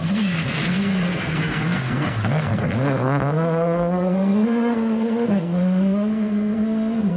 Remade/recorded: remade